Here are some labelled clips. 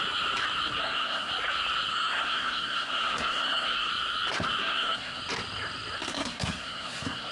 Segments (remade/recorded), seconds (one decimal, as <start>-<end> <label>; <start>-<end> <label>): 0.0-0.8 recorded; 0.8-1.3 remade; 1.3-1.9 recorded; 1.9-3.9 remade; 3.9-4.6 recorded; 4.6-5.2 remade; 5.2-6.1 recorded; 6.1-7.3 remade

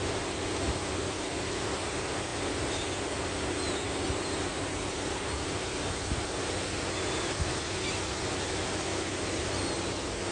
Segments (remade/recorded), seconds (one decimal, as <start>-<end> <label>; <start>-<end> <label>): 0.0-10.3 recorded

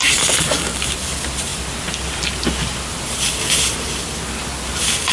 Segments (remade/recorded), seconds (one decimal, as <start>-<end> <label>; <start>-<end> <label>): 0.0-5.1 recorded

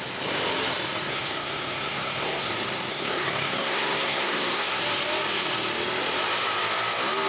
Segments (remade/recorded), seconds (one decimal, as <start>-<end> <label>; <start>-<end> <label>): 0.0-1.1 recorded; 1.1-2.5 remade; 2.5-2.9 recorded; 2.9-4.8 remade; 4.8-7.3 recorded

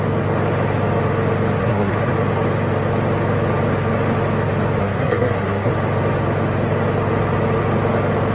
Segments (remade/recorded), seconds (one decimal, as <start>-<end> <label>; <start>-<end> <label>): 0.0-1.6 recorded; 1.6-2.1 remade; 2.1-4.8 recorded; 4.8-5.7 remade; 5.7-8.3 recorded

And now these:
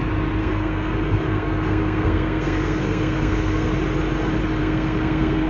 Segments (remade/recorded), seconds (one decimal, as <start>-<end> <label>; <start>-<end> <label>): 0.0-0.4 recorded; 0.4-3.7 remade; 3.7-4.6 recorded; 4.6-5.5 remade